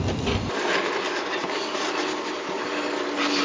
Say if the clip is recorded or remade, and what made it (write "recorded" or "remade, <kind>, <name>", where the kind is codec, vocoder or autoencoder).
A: recorded